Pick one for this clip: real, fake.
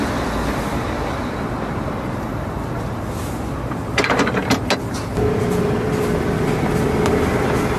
real